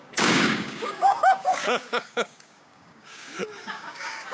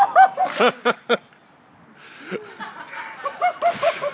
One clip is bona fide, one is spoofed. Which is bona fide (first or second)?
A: second